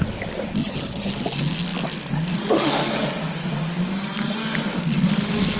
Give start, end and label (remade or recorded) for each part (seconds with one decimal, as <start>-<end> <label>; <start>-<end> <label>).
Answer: 0.0-0.6 recorded; 0.6-1.1 remade; 1.1-5.6 recorded